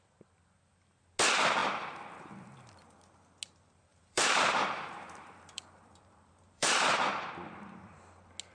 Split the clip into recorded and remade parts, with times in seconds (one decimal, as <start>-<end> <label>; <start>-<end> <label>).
0.0-3.9 recorded; 3.9-7.3 remade; 7.3-8.5 recorded